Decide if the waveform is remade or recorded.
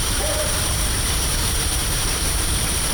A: remade